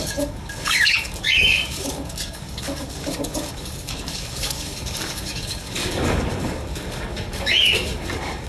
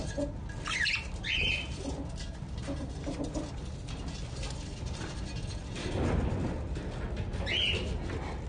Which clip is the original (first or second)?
second